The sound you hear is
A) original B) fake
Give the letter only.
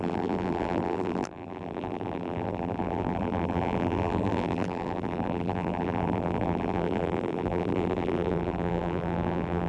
B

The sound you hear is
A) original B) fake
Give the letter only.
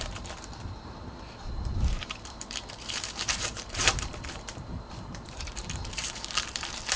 B